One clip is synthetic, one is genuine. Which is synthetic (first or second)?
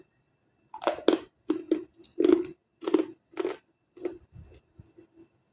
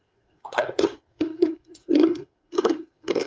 second